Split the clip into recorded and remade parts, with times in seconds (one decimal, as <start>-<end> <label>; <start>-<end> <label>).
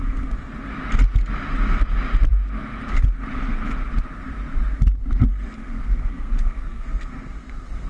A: 0.0-0.5 remade; 0.5-5.3 recorded; 5.3-7.9 remade